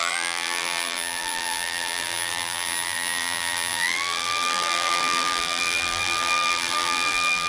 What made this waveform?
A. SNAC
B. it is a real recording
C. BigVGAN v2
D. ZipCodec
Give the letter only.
C